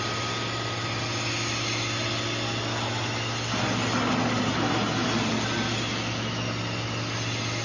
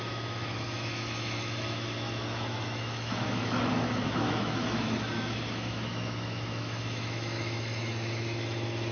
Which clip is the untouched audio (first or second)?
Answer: first